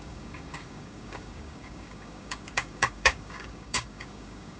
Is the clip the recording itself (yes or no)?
no